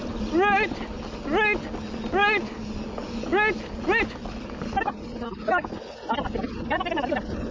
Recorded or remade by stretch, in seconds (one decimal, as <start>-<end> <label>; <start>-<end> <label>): 0.0-7.5 recorded

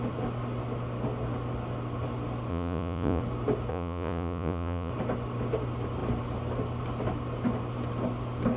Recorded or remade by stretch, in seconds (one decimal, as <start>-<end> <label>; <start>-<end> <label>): 0.0-2.5 recorded; 2.5-3.2 remade; 3.2-3.7 recorded; 3.7-4.9 remade; 4.9-8.6 recorded

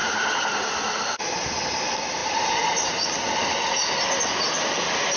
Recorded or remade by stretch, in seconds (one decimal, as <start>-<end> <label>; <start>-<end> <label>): 0.0-2.2 remade; 2.2-4.6 recorded; 4.6-5.2 remade